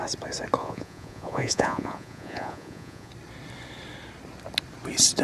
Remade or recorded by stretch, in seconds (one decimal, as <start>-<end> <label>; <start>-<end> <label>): 0.0-0.6 recorded; 0.6-3.1 remade; 3.1-5.2 recorded